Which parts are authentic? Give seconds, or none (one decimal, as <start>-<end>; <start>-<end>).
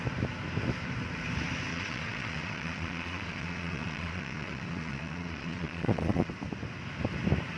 0.0-1.7; 6.3-7.6